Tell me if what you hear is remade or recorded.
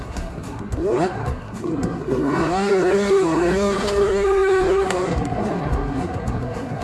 remade